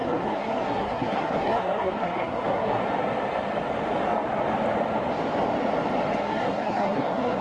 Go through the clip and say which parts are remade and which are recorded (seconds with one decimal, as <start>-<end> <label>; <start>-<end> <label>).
0.0-2.8 remade; 2.8-6.2 recorded; 6.2-7.4 remade